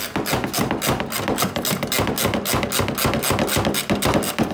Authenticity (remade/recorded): recorded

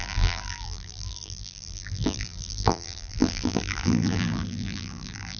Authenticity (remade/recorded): remade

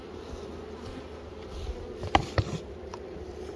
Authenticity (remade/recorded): remade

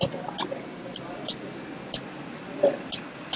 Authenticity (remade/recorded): recorded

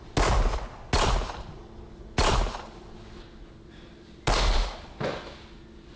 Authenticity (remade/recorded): recorded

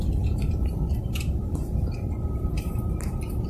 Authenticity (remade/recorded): recorded